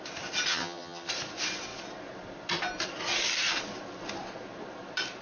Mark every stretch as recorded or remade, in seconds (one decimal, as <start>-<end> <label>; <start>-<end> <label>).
0.0-0.5 recorded; 0.5-1.1 remade; 1.1-5.2 recorded